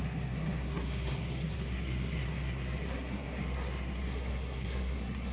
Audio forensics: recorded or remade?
remade